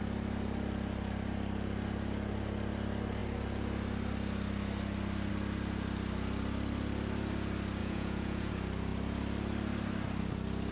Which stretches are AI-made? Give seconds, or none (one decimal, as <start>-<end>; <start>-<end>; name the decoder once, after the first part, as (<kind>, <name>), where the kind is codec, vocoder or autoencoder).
7.8-8.5 (vocoder, Vocos)